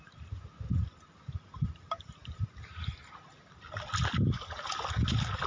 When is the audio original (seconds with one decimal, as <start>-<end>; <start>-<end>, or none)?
0.0-5.5